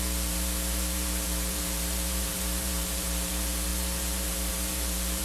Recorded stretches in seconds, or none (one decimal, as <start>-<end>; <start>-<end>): none